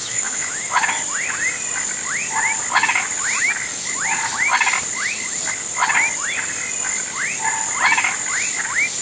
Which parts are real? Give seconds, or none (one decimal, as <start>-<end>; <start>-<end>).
0.9-9.0